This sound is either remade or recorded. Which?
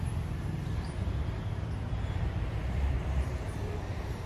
remade